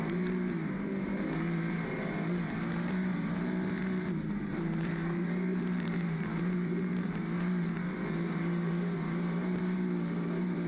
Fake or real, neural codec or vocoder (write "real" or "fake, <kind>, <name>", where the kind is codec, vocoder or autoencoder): fake, vocoder, BigVGAN v2